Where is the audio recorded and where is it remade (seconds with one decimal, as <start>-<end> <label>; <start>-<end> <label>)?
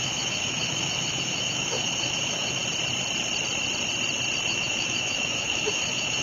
0.0-2.6 remade; 2.6-4.5 recorded; 4.5-6.2 remade